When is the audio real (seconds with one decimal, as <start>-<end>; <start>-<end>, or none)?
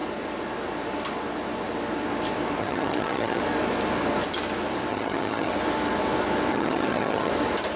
0.0-2.6; 3.4-4.9; 5.5-6.5; 7.3-7.8